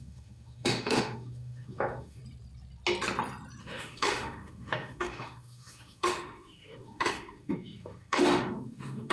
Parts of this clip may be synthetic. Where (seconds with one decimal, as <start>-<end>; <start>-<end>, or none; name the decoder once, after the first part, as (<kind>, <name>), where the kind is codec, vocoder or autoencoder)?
0.0-2.2 (autoencoder, DAC-VAE); 3.6-9.1